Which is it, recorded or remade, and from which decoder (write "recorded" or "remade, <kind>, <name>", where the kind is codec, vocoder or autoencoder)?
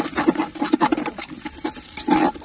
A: recorded